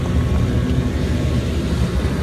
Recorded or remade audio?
recorded